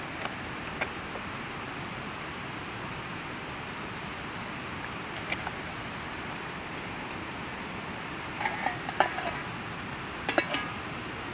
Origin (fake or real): real